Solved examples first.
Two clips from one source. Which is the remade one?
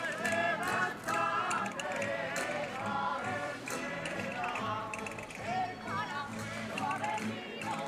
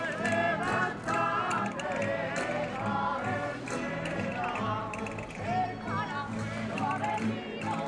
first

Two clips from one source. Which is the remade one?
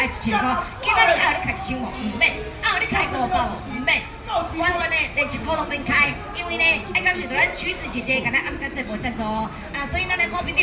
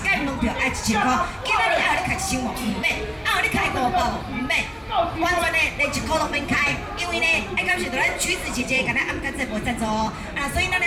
second